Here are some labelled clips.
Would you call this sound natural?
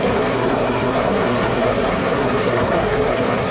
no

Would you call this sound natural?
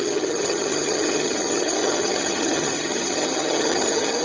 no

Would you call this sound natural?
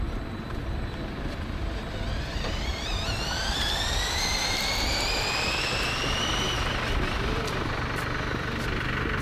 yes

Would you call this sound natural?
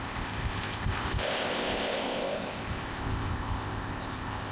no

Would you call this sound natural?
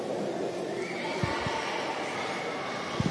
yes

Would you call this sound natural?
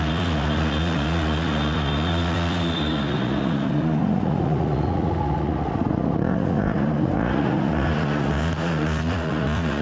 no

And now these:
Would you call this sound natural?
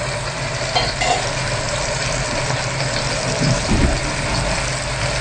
yes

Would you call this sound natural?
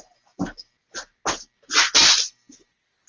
yes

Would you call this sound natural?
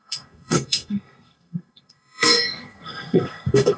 no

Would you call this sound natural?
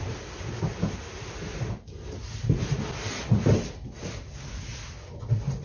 yes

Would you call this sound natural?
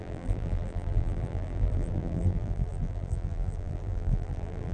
no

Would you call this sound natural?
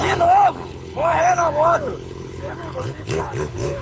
no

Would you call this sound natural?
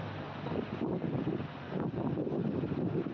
yes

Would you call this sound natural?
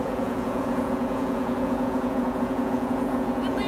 no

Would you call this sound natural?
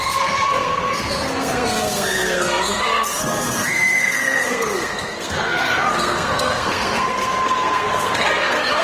no